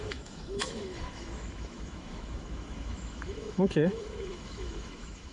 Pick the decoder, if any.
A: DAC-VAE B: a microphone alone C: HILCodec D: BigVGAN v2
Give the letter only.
A